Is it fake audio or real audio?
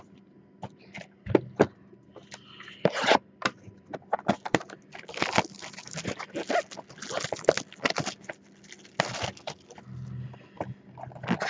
real